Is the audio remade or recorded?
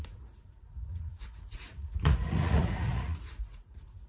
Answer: remade